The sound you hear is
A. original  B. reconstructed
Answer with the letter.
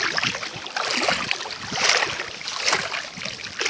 A